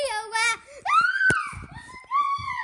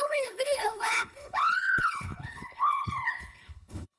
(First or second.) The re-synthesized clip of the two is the second